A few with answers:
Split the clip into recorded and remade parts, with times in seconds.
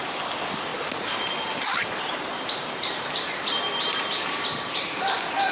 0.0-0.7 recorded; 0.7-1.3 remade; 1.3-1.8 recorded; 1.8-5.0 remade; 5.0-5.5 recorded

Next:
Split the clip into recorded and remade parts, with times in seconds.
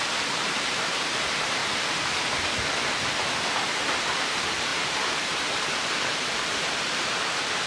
0.0-1.6 remade; 1.6-4.1 recorded; 4.1-7.7 remade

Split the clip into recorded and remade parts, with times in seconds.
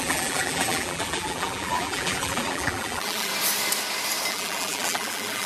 0.0-3.3 remade; 3.3-4.3 recorded; 4.3-5.5 remade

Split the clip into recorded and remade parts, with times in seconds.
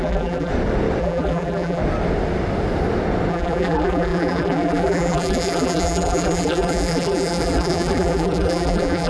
0.0-0.5 remade; 0.5-1.0 recorded; 1.0-1.8 remade; 1.8-3.3 recorded; 3.3-9.1 remade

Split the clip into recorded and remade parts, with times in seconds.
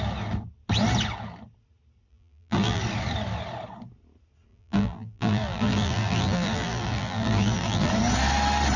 0.0-2.1 recorded; 2.1-2.8 remade; 2.8-4.5 recorded; 4.5-7.9 remade; 7.9-8.8 recorded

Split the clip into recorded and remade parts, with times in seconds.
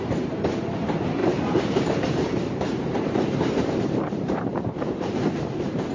0.0-5.9 remade